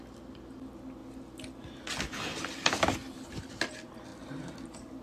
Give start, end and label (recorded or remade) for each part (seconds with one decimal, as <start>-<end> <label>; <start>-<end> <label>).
0.0-2.3 recorded; 2.3-3.5 remade; 3.5-4.1 recorded; 4.1-5.0 remade